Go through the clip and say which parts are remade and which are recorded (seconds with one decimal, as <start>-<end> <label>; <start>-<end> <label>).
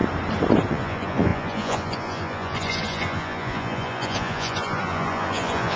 0.0-0.7 recorded; 0.7-5.8 remade